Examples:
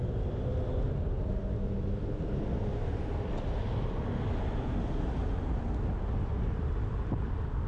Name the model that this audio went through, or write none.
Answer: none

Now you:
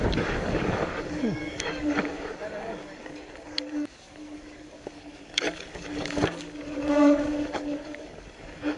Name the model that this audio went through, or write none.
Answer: codec, DAC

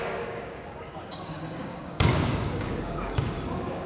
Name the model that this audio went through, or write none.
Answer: codec, DAC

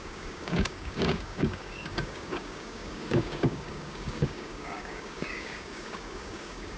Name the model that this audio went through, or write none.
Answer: codec, DAC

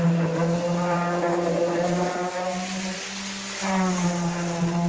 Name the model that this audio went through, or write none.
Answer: none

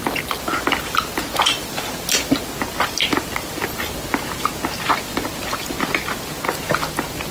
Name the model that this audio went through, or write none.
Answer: none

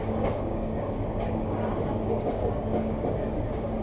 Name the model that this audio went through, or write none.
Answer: codec, DAC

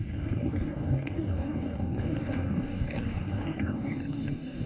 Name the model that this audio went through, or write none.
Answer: codec, DAC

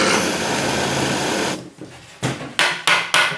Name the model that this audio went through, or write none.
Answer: none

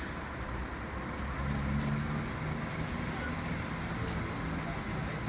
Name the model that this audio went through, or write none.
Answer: none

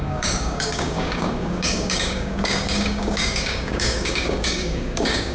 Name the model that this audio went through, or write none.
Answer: codec, DAC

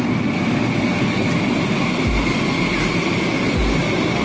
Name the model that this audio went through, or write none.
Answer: none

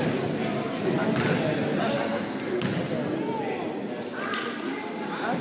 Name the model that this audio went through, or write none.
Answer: none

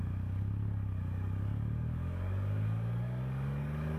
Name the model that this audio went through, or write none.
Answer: codec, DAC